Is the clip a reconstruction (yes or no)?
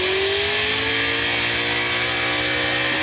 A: no